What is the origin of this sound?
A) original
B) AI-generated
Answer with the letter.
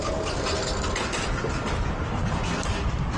A